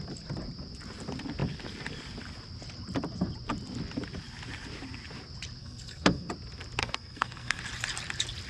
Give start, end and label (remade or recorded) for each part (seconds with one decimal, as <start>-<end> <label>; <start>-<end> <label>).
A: 0.0-5.6 recorded; 5.6-6.3 remade; 6.3-6.8 recorded; 6.8-7.6 remade; 7.6-8.5 recorded

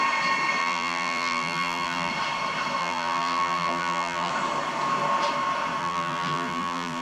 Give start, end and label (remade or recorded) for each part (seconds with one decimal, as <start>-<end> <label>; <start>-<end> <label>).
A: 0.0-0.6 recorded; 0.6-2.1 remade; 2.1-2.8 recorded; 2.8-4.3 remade; 4.3-5.8 recorded; 5.8-7.0 remade